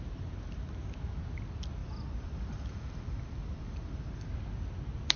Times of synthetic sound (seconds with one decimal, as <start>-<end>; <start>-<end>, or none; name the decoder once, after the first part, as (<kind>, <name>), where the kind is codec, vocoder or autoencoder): 1.8-4.3 (vocoder, BigVGAN v2)